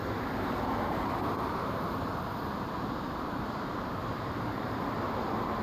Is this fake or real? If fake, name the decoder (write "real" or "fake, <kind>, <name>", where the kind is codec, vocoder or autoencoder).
fake, vocoder, BigVGAN v2